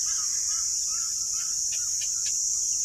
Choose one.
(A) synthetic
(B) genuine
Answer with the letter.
B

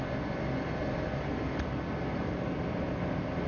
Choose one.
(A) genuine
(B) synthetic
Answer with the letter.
A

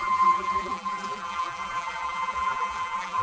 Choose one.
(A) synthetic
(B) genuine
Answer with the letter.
A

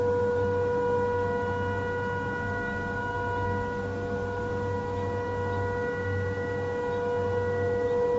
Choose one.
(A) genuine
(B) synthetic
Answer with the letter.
A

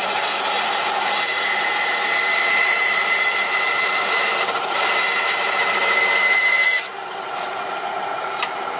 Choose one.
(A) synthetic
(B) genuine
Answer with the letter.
A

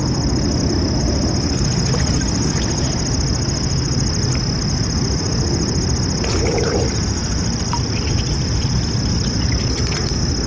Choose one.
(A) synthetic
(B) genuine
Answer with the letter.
B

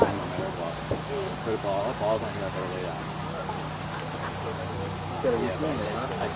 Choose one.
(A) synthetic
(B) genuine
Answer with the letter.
B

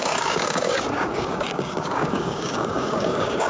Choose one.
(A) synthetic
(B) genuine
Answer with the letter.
A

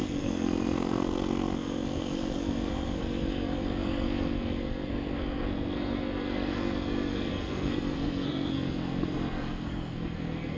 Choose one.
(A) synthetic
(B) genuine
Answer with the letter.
A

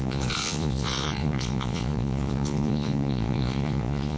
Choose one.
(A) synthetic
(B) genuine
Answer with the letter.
A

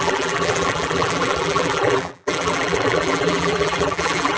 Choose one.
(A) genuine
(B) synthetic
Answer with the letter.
B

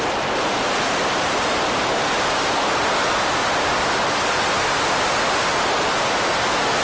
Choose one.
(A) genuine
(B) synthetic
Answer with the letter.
A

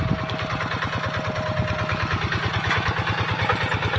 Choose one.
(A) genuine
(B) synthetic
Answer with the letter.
A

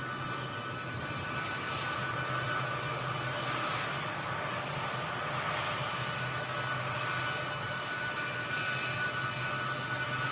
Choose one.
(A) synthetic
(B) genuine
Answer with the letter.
B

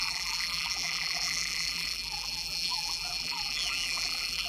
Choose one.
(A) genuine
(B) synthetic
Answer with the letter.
B